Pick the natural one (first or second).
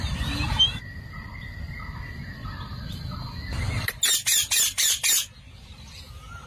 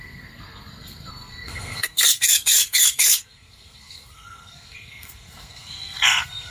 first